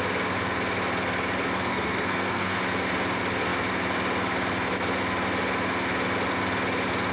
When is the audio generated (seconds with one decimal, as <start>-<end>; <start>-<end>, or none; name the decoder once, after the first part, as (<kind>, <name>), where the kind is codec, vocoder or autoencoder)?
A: 1.7-2.6 (codec, SNAC)

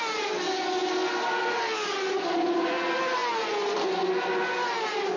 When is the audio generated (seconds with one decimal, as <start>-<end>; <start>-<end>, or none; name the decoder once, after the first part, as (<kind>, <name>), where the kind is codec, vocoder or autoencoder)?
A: none

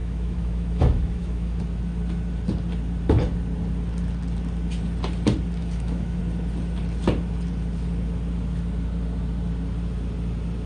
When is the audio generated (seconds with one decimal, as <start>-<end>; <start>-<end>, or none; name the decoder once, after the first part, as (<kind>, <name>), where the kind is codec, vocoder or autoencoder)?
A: 0.0-1.6 (autoencoder, DAC-VAE); 5.6-6.2

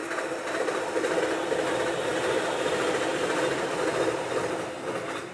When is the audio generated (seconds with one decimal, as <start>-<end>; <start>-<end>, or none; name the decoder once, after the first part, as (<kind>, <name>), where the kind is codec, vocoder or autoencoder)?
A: 0.0-1.2 (vocoder, BigVGAN v2)

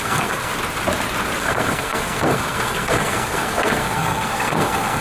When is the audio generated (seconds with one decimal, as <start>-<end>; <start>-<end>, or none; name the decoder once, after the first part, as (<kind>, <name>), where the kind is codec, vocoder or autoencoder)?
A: 0.0-0.5 (codec, SNAC); 1.4-5.0

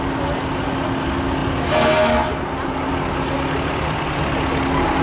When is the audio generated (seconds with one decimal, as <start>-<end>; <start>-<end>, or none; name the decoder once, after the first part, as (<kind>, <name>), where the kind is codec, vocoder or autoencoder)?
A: none

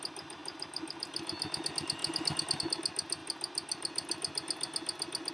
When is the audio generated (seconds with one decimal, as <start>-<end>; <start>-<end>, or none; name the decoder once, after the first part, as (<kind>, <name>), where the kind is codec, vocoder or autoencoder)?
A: none

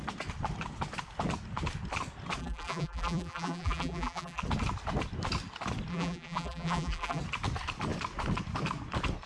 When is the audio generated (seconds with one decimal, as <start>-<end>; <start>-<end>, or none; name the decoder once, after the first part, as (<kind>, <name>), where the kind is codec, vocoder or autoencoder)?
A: 2.4-4.4 (vocoder, BigVGAN v2); 5.9-7.2